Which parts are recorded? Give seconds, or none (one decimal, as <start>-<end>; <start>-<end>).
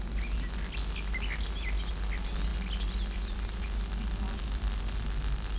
0.0-5.6